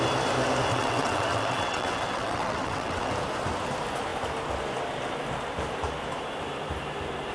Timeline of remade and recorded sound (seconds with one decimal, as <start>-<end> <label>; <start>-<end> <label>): 0.0-0.7 recorded; 0.7-3.1 remade; 3.1-7.3 recorded